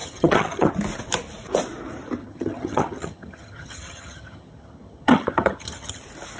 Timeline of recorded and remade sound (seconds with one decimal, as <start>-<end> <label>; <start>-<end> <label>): 0.0-0.7 remade; 0.7-2.2 recorded; 2.2-6.0 remade; 6.0-6.4 recorded